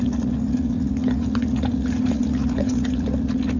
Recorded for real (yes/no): no